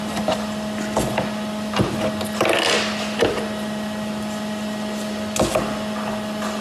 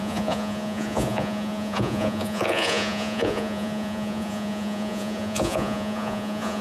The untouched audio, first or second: first